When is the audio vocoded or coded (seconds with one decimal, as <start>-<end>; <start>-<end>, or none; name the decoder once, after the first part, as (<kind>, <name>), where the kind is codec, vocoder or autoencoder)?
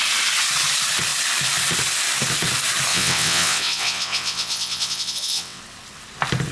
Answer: 2.9-5.6 (vocoder, WaveNeXt)